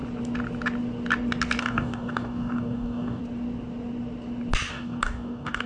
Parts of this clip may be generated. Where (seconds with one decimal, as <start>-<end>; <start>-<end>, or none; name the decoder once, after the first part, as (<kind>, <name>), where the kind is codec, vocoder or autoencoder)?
1.6-3.2 (codec, DAC); 4.7-5.7